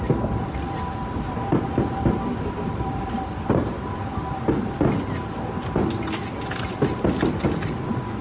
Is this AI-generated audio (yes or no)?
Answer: no